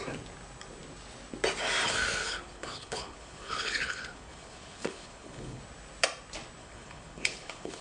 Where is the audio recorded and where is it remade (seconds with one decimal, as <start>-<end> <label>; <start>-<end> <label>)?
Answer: 0.0-2.2 recorded; 2.2-5.6 remade; 5.6-6.6 recorded; 6.6-7.8 remade